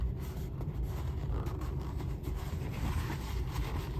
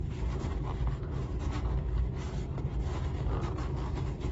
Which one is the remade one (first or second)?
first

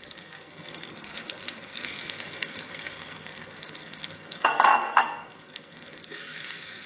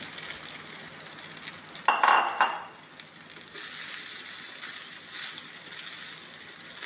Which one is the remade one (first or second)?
first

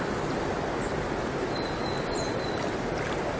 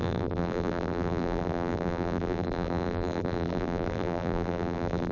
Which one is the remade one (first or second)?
second